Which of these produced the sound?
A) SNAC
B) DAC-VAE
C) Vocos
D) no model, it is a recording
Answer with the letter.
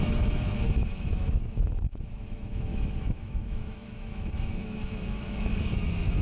B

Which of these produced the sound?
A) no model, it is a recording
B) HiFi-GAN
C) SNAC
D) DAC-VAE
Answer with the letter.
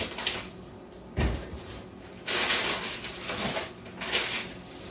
A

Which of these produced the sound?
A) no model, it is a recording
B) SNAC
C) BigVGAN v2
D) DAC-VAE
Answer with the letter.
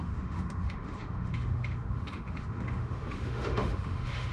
D